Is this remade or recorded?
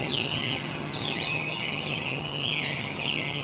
remade